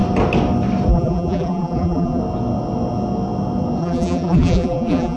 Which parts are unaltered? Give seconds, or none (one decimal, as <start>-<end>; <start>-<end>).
0.0-0.9; 2.2-3.8